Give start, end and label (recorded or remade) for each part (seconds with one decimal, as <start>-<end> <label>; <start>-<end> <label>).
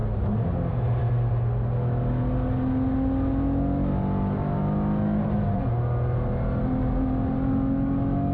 0.0-8.3 recorded